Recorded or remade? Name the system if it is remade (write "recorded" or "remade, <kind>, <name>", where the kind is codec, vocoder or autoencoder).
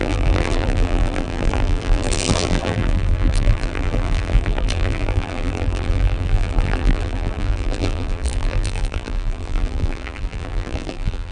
remade, vocoder, BigVGAN v2